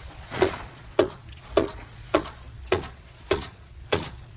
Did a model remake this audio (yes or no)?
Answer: yes